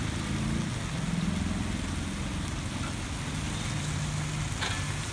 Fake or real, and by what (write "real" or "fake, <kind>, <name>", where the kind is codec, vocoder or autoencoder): real